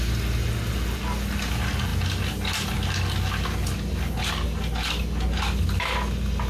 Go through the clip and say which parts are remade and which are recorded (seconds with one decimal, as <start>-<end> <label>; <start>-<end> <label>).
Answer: 0.0-6.5 recorded

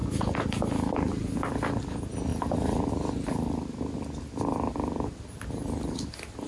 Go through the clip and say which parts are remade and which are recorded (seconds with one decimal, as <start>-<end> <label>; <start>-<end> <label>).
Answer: 0.0-6.5 recorded

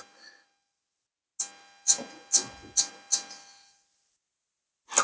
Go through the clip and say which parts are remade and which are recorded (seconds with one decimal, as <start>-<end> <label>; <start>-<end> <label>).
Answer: 0.0-5.0 recorded

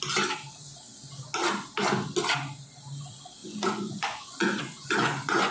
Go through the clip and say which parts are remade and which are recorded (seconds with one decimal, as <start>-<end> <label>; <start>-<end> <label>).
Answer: 0.0-3.4 recorded; 3.4-5.5 remade

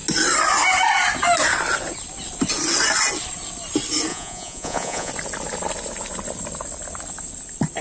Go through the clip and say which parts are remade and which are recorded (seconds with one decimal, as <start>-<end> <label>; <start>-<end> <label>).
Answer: 0.0-4.1 recorded; 4.1-5.1 remade; 5.1-7.8 recorded

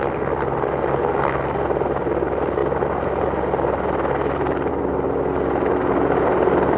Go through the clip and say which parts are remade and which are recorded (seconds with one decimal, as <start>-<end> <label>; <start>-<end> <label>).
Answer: 0.0-6.8 recorded

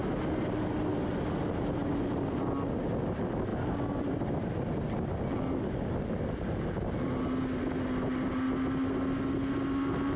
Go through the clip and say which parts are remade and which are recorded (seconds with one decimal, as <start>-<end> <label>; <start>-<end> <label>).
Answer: 0.0-10.2 recorded